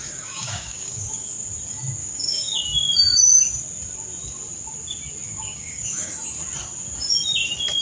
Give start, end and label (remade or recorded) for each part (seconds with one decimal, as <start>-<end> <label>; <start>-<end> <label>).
0.0-1.3 remade; 1.3-2.0 recorded; 2.0-2.6 remade; 2.6-5.3 recorded; 5.3-6.1 remade; 6.1-7.8 recorded